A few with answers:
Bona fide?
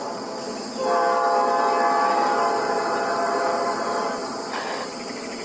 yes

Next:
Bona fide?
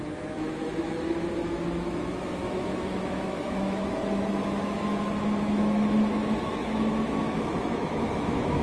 no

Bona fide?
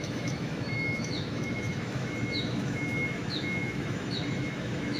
no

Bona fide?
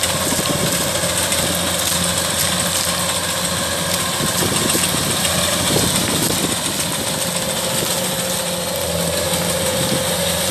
yes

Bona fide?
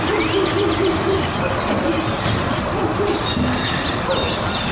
yes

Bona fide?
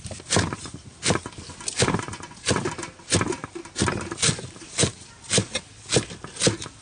yes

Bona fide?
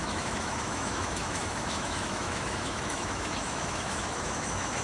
no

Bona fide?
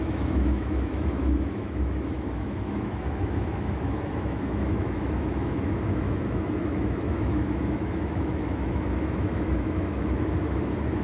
no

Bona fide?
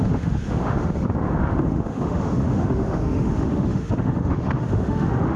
no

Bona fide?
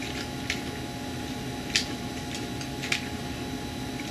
yes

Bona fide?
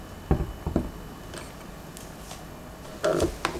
yes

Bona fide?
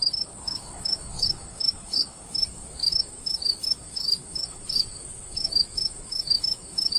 no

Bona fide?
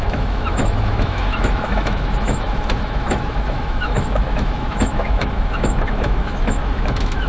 no